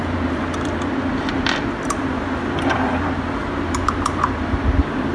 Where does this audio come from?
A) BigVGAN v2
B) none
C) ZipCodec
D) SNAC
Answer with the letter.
A